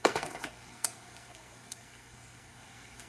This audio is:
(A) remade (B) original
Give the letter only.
A